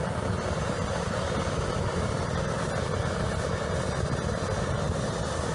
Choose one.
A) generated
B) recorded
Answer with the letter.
B